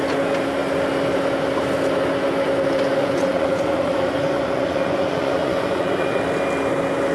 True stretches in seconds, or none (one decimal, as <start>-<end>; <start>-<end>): 0.0-3.0; 6.2-7.1